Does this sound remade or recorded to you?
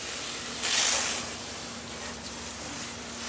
recorded